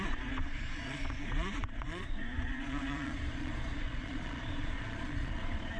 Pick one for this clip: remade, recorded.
remade